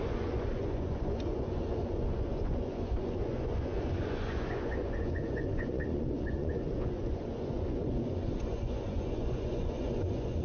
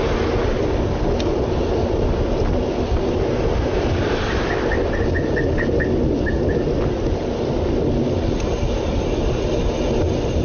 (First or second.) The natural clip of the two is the second